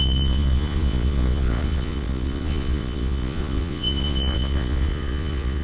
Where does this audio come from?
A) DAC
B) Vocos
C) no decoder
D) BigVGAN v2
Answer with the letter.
B